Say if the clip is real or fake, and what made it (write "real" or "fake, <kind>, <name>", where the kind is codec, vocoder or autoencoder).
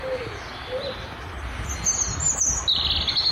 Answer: real